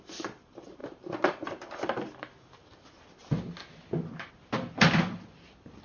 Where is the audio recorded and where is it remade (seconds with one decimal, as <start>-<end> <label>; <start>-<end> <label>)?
0.0-5.8 recorded